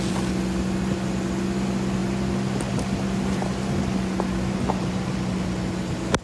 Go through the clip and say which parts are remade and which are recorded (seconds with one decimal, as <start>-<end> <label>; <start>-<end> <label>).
0.0-6.2 recorded